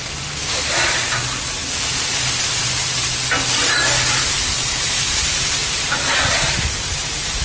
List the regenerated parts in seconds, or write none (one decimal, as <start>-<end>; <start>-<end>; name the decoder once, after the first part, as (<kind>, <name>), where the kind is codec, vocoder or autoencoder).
0.0-1.6 (vocoder, BigVGAN v2); 4.1-5.6; 6.1-7.4

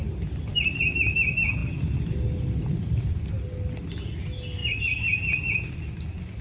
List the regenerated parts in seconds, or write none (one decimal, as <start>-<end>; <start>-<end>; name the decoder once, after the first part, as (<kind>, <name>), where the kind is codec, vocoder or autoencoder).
1.6-3.0 (vocoder, BigVGAN v2); 4.6-5.7

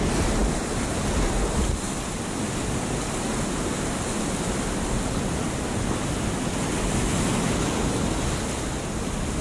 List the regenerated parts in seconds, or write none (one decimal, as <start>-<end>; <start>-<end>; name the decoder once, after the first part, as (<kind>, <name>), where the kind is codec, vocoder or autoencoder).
none

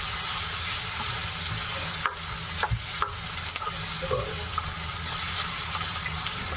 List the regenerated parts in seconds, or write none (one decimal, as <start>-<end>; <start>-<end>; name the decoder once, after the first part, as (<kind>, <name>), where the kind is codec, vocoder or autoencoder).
0.0-1.2 (vocoder, BigVGAN v2); 5.2-6.6